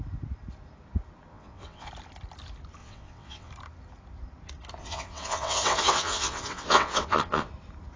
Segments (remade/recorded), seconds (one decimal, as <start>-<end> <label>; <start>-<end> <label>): 0.0-1.3 recorded; 1.3-1.9 remade; 1.9-2.8 recorded; 2.8-3.5 remade; 3.5-4.8 recorded; 4.8-7.5 remade; 7.5-8.0 recorded